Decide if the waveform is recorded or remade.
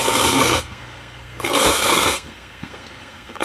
remade